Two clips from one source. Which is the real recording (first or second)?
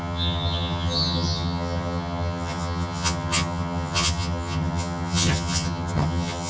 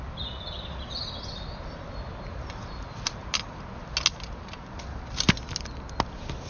second